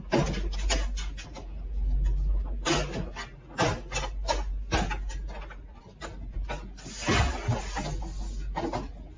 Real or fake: real